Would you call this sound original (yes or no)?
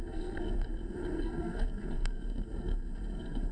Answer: no